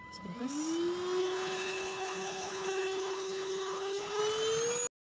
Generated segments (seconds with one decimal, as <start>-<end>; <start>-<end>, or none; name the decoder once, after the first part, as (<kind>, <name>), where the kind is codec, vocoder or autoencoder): 1.2-4.2 (codec, HILCodec)